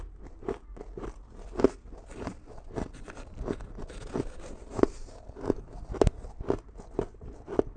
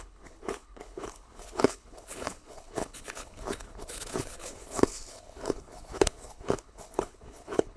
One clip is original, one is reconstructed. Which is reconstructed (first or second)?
second